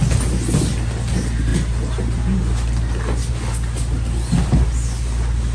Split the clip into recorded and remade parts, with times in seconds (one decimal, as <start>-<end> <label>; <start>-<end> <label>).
0.0-5.5 recorded